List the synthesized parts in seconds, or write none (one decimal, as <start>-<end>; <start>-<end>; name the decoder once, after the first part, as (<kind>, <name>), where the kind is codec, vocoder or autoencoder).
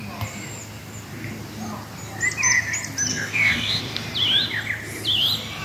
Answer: 3.1-3.8 (codec, DAC)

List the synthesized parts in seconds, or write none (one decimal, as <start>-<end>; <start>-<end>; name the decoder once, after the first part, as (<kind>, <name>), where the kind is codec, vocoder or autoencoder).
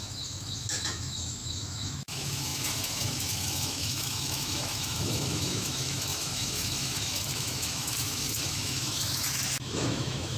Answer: 0.0-10.4 (autoencoder, DAC-VAE)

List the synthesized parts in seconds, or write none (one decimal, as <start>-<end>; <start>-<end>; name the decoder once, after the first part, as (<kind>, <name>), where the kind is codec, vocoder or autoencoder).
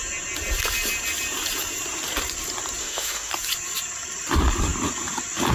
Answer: 2.8-3.3 (autoencoder, DAC-VAE)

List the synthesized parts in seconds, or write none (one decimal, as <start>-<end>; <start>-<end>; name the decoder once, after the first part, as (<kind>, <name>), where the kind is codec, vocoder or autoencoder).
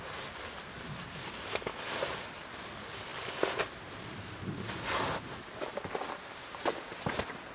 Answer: none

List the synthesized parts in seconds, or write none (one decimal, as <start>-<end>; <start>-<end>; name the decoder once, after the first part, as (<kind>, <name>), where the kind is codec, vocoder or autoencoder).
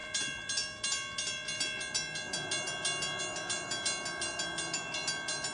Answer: none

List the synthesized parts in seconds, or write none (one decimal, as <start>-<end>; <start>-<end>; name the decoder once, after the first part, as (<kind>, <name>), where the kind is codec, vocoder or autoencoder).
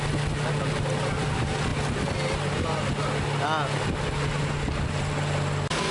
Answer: none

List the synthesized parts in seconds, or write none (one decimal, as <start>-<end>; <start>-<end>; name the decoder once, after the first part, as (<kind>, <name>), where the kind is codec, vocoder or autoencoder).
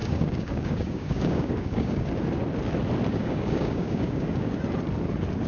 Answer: 0.0-2.1 (codec, DAC); 3.1-4.5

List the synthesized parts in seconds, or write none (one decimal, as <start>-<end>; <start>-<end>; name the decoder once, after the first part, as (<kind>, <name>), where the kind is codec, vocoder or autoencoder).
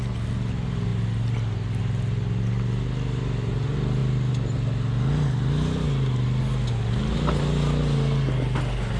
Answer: none